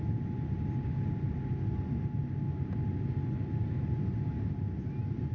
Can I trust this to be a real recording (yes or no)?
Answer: yes